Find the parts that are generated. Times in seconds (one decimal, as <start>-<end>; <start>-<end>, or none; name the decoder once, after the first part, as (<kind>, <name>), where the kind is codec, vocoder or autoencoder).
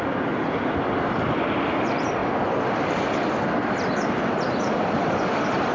2.2-5.7 (vocoder, BigVGAN v2)